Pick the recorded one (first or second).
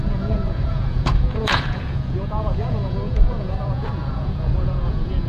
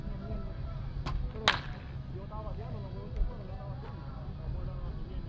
second